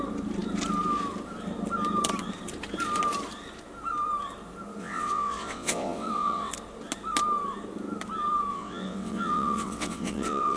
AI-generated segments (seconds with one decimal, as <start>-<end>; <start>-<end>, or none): 4.8-6.5; 8.5-10.6